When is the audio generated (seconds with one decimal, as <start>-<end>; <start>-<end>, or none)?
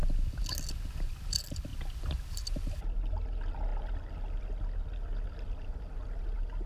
none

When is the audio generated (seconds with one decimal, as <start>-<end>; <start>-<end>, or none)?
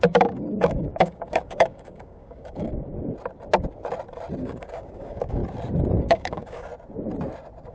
0.0-2.9; 4.4-5.4; 6.0-6.7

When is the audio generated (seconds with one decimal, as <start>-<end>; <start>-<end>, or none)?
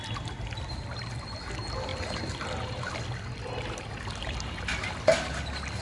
none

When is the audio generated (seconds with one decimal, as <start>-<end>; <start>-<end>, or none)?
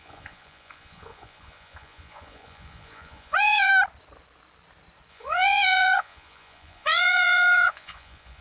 0.0-3.7; 5.1-8.4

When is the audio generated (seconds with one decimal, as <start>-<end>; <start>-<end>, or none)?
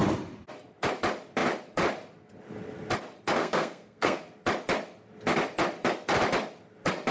3.4-4.2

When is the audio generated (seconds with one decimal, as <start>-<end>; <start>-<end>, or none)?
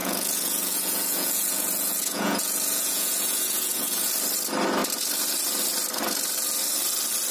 0.0-4.1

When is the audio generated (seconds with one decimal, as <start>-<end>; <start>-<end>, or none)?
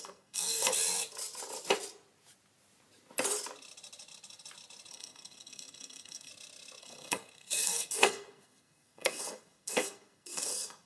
0.0-0.7; 4.9-6.3; 6.8-10.9